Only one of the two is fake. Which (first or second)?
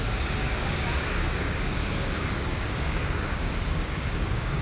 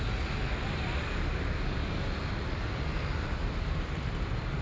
first